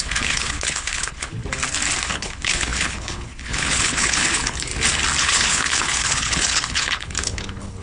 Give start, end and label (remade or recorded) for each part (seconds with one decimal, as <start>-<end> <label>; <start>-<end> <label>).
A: 0.0-1.4 remade; 1.4-2.1 recorded; 2.1-4.7 remade; 4.7-5.2 recorded; 5.2-7.8 remade